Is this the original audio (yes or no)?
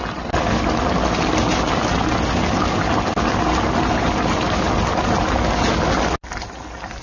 yes